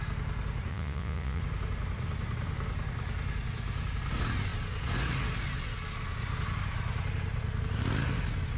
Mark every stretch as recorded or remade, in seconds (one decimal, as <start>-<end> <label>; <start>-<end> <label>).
0.0-0.7 recorded; 0.7-1.4 remade; 1.4-8.6 recorded